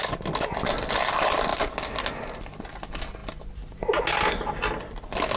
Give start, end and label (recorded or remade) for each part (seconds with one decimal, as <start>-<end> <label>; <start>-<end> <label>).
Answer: 0.0-5.4 recorded